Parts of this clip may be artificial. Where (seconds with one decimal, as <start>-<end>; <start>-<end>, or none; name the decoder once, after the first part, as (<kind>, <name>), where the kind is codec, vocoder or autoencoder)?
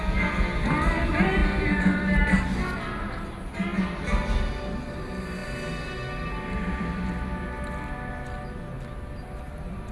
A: none